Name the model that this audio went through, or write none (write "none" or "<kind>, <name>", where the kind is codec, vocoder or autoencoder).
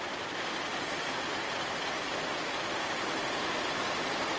none